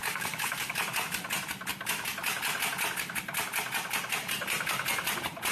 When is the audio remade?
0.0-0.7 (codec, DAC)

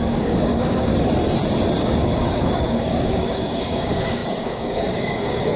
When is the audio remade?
0.0-0.9 (codec, DAC); 1.8-5.6

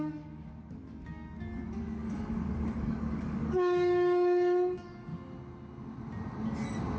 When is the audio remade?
0.0-5.1 (codec, DAC)

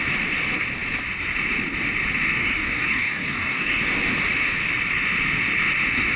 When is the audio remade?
2.4-3.8 (codec, DAC)

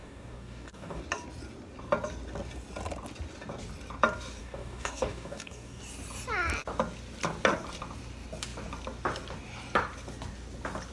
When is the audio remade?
0.0-1.0 (codec, DAC); 4.4-5.8